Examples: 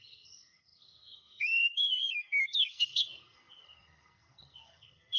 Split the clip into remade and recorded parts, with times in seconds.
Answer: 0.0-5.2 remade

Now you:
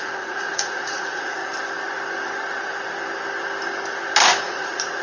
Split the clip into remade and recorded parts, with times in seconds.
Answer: 0.0-1.4 remade; 1.4-4.4 recorded; 4.4-5.0 remade

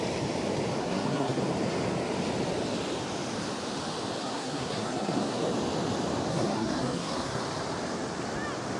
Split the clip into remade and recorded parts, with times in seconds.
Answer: 0.0-0.8 recorded; 0.8-1.4 remade; 1.4-4.2 recorded; 4.2-5.5 remade; 5.5-6.3 recorded; 6.3-7.4 remade; 7.4-8.8 recorded

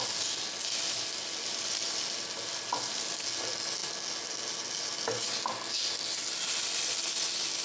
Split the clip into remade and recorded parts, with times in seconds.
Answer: 0.0-7.6 recorded

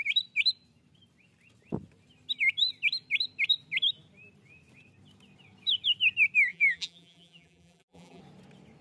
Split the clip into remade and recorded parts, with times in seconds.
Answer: 0.0-6.5 recorded; 6.5-8.2 remade; 8.2-8.8 recorded

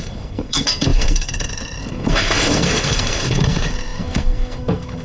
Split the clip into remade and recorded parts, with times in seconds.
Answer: 0.0-5.0 remade